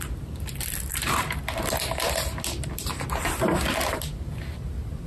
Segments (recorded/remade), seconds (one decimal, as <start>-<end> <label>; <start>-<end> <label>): 0.0-0.9 recorded; 0.9-1.4 remade; 1.4-5.1 recorded